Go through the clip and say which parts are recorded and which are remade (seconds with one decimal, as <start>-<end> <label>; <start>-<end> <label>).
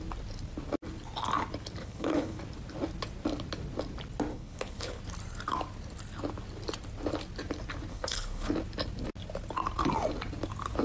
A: 0.0-1.8 recorded; 1.8-2.4 remade; 2.4-4.3 recorded; 4.3-5.0 remade; 5.0-7.9 recorded; 7.9-8.5 remade; 8.5-10.8 recorded